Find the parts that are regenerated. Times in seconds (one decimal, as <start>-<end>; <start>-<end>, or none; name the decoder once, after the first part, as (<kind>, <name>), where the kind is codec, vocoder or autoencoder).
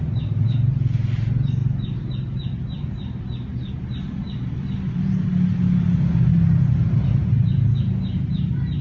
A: none